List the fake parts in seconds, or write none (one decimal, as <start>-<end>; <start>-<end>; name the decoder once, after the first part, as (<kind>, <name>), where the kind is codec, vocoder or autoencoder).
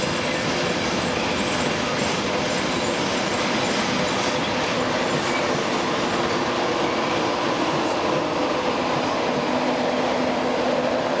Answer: none